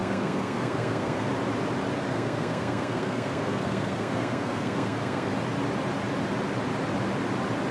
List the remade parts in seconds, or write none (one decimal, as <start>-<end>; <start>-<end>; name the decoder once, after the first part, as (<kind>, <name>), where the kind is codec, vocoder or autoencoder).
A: 0.0-1.3 (codec, SNAC); 2.1-5.3